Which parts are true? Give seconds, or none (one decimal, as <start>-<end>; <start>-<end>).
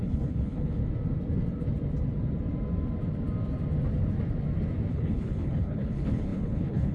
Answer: 0.8-4.9